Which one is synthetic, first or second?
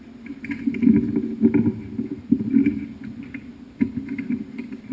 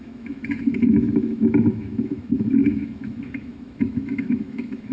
second